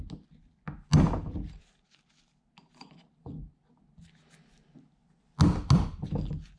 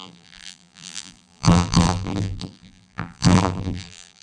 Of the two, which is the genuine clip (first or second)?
first